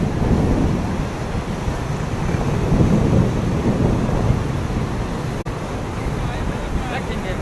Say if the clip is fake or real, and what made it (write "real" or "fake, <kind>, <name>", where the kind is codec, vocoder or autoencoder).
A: real